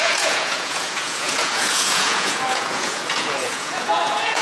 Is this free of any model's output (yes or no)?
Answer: no